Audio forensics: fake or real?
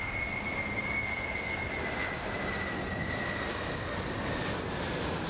real